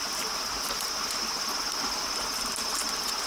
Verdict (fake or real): real